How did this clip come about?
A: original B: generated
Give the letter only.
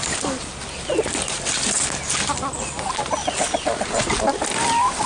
A